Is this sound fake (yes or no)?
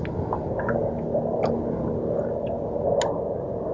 no